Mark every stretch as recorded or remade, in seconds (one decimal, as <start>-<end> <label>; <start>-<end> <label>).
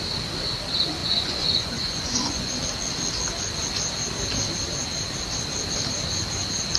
0.0-1.0 recorded; 1.0-2.6 remade; 2.6-6.8 recorded